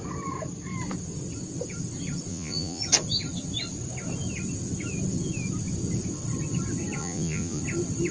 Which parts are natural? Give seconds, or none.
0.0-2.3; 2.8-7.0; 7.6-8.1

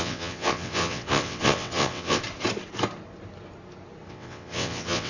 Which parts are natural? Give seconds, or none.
2.2-4.1

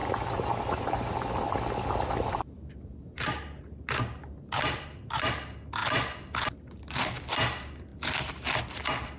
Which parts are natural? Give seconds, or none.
0.0-9.2

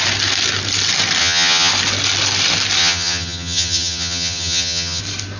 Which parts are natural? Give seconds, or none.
0.0-1.2; 1.7-2.8; 5.0-5.4

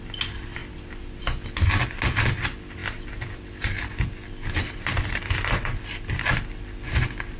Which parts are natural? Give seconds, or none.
0.0-7.4